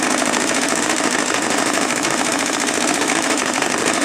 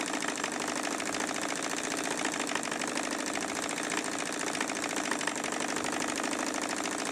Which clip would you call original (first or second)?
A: second